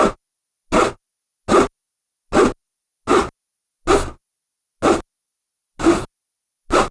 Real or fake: real